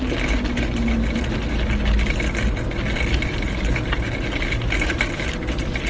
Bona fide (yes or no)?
yes